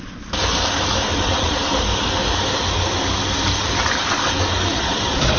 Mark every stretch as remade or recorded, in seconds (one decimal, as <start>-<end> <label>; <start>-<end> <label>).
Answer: 0.0-1.1 recorded; 1.1-1.6 remade; 1.6-4.8 recorded; 4.8-5.4 remade